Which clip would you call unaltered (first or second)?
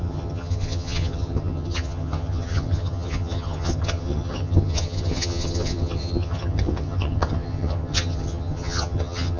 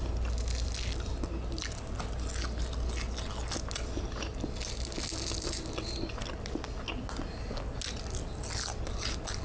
second